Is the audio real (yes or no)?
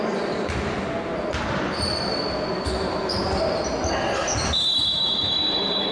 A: yes